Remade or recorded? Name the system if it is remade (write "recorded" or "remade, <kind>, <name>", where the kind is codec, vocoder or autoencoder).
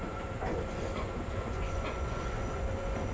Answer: remade, vocoder, Vocos